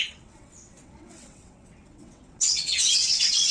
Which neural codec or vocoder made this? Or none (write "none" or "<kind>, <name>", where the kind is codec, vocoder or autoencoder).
vocoder, WaveNeXt